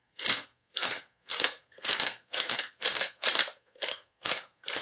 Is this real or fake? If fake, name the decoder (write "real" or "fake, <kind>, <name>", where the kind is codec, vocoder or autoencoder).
fake, codec, SNAC